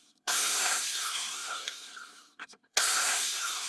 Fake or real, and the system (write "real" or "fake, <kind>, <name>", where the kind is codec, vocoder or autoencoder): fake, codec, SNAC